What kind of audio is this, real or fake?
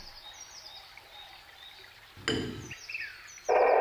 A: real